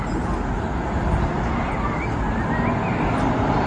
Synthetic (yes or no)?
no